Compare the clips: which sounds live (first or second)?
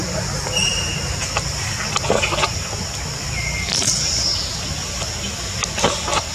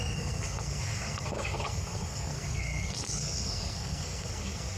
first